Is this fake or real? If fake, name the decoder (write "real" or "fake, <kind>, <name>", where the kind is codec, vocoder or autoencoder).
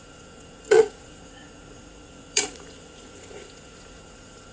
fake, vocoder, Vocos